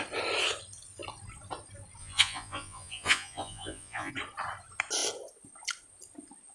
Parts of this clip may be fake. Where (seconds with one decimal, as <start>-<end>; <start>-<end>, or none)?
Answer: 2.0-4.1